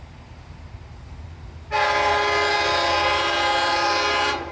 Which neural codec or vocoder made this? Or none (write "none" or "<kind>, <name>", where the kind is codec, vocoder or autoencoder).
none